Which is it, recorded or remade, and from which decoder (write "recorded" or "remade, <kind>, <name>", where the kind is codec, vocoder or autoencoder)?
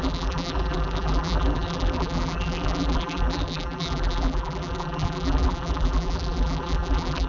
remade, vocoder, BigVGAN v2